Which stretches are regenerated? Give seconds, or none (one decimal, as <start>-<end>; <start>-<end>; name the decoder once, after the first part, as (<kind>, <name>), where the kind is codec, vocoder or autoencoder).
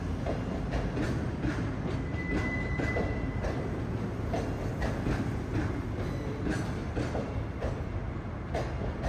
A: 6.8-7.3 (vocoder, BigVGAN v2)